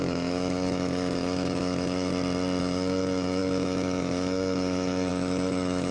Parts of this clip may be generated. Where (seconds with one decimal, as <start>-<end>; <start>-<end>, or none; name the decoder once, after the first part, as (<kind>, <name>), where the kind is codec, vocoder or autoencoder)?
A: 0.0-2.1 (autoencoder, DAC-VAE); 2.6-5.9